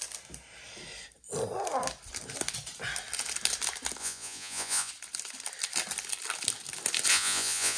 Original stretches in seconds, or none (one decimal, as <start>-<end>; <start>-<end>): 0.0-4.0; 4.9-7.1